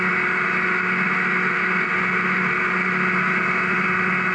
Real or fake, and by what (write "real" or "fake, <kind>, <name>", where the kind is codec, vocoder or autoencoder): real